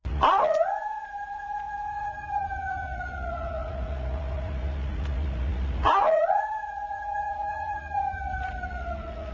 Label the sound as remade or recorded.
remade